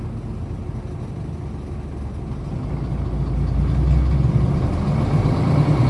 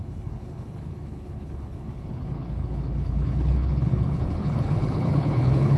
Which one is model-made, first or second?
second